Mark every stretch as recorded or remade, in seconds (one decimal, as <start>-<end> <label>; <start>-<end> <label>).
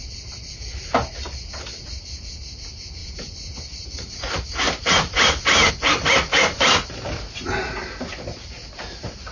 0.0-1.1 remade; 1.1-3.0 recorded; 3.0-5.7 remade; 5.7-9.3 recorded